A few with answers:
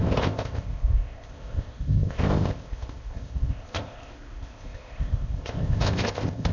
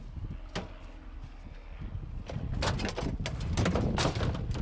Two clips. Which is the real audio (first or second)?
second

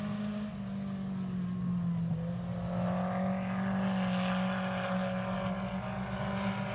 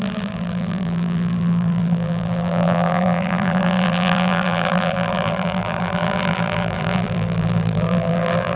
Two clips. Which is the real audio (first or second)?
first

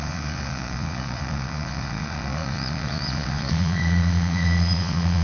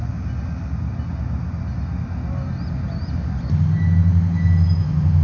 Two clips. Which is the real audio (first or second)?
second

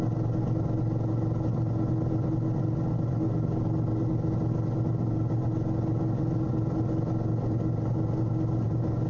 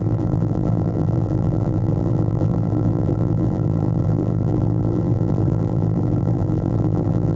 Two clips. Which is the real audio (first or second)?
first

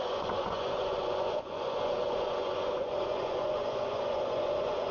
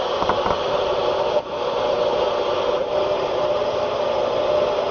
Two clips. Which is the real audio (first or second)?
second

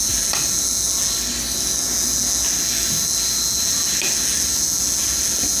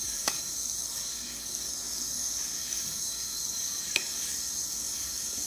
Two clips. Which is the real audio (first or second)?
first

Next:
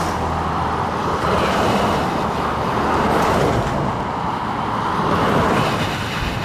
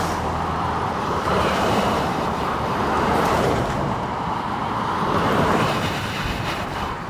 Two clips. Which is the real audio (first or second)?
first